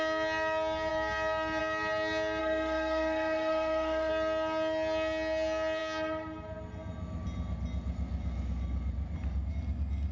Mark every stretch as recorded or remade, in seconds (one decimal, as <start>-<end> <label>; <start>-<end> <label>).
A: 0.0-2.4 recorded; 2.4-4.1 remade; 4.1-10.1 recorded